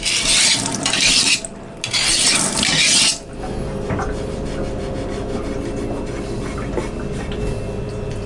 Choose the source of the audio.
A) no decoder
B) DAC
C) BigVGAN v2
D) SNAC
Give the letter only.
A